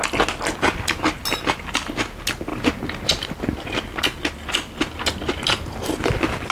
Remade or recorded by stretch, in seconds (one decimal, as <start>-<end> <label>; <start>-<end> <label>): 0.0-2.5 recorded; 2.5-3.4 remade; 3.4-6.5 recorded